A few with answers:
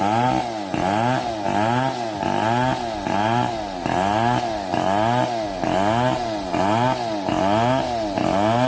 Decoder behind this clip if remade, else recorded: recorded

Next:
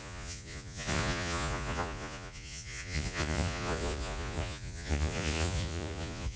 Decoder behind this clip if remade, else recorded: remade, vocoder, Vocos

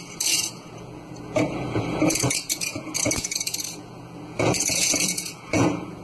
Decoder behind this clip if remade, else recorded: remade, vocoder, Vocos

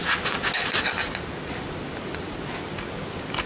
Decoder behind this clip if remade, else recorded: recorded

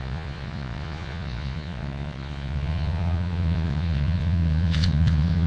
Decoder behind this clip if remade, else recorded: remade, vocoder, Vocos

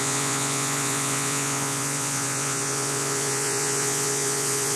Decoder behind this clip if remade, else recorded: remade, vocoder, Vocos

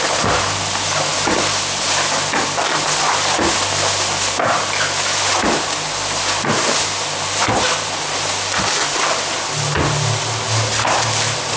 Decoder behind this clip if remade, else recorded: recorded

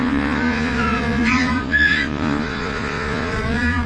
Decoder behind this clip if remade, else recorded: remade, vocoder, Vocos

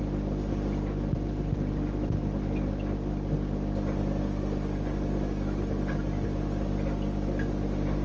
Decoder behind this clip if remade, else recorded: recorded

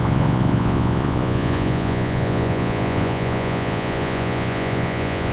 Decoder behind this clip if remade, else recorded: remade, vocoder, Vocos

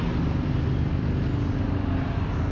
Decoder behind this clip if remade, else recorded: recorded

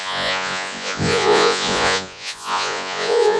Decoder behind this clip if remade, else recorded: remade, vocoder, Vocos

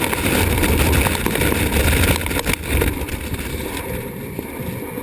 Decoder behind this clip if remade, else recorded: recorded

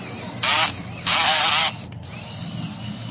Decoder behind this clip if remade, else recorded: recorded